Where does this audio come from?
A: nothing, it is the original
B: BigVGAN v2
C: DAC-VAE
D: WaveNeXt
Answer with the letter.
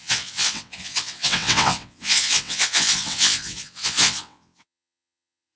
D